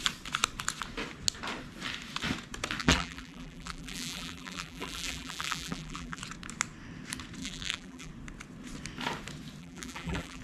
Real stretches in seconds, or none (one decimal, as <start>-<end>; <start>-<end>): 0.0-2.8; 6.2-7.4; 8.1-9.6